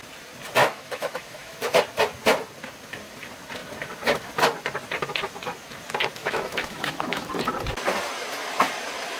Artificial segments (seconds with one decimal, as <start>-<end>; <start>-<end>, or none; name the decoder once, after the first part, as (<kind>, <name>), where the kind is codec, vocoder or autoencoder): 0.6-1.8 (autoencoder, DAC-VAE); 6.2-7.3